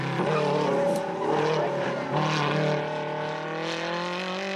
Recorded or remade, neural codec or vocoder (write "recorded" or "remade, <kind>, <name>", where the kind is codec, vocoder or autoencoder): recorded